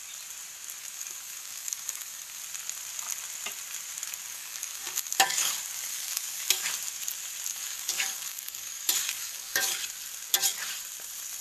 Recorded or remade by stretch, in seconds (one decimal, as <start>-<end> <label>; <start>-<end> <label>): 0.0-0.8 recorded; 0.8-2.4 remade; 2.4-4.3 recorded; 4.3-5.5 remade; 5.5-5.9 recorded; 5.9-6.7 remade; 6.7-7.5 recorded; 7.5-9.8 remade; 9.8-11.4 recorded